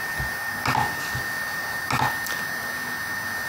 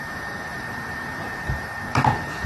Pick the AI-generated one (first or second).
second